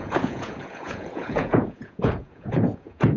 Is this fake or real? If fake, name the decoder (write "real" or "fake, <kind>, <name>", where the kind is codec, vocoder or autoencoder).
fake, vocoder, Vocos